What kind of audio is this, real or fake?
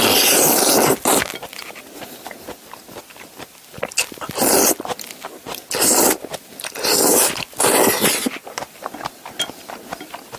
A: real